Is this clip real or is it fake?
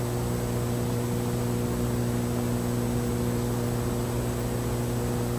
real